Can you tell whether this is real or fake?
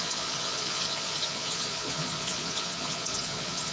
fake